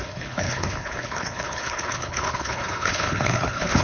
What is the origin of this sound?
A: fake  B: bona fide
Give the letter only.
A